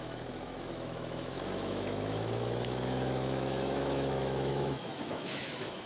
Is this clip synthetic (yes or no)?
yes